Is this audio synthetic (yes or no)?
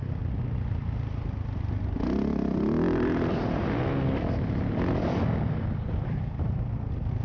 no